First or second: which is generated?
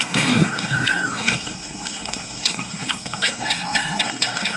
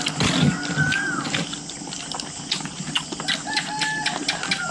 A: first